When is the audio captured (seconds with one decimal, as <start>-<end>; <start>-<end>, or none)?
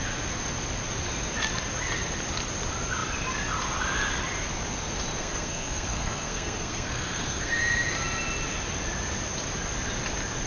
0.0-5.2; 7.6-10.5